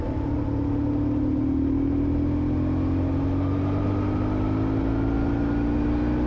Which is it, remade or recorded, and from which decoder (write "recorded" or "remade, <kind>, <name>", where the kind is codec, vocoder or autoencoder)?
recorded